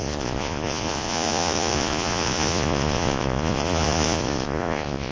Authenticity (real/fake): fake